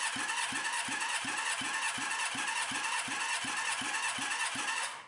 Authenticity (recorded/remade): recorded